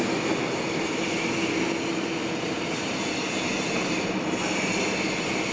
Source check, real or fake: real